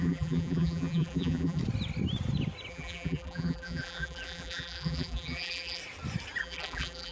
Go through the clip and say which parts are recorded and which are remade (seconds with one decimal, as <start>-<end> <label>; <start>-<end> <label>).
0.0-1.6 remade; 1.6-2.7 recorded; 2.7-5.8 remade; 5.8-6.4 recorded; 6.4-7.1 remade